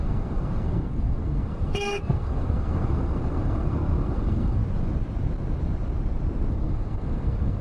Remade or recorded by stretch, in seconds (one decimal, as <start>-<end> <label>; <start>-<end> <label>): 0.0-4.6 remade; 4.6-6.5 recorded; 6.5-7.6 remade